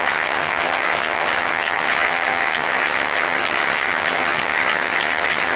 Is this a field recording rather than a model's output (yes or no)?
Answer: no